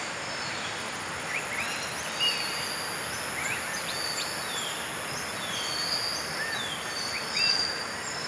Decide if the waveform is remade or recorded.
recorded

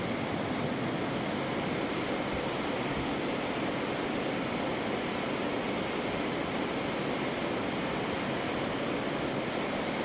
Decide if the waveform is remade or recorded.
recorded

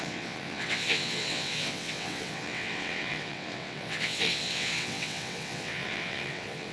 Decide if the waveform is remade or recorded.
remade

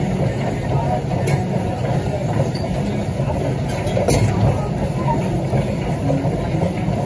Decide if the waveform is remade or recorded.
recorded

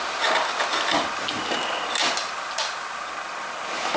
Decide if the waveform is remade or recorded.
recorded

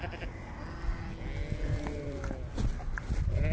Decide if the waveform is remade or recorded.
recorded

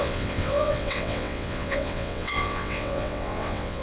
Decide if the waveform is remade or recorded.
remade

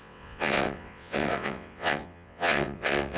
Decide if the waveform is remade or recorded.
remade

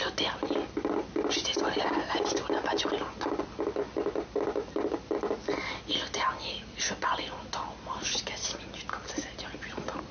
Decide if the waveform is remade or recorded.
recorded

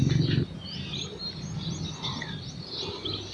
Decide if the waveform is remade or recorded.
recorded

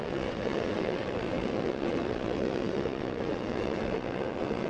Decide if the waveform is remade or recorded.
remade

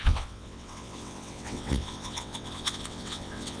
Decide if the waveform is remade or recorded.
remade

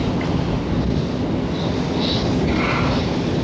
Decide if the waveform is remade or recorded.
recorded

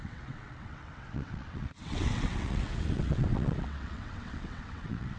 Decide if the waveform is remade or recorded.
remade